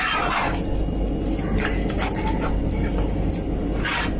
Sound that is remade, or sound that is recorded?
recorded